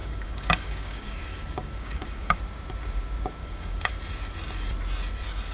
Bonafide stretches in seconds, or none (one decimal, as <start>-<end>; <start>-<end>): 2.4-3.4; 3.9-5.5